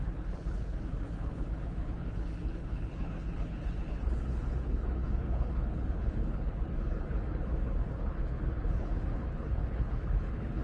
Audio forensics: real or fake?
fake